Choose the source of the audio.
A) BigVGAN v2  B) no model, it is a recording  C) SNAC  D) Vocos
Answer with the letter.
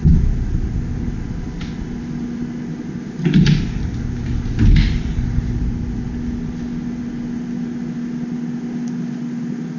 B